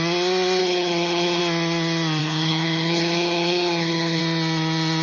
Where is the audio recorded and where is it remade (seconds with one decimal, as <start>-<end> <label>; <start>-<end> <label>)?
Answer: 0.0-0.6 recorded; 0.6-1.4 remade; 1.4-2.2 recorded; 2.2-4.2 remade; 4.2-5.0 recorded